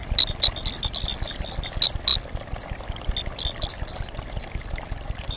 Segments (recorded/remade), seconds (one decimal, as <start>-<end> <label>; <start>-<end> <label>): 0.0-5.4 recorded